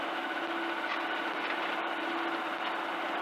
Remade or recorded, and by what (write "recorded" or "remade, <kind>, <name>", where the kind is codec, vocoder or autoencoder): recorded